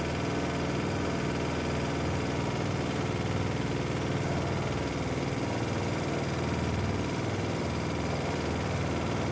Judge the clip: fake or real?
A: real